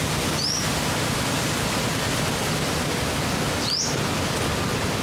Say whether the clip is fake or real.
real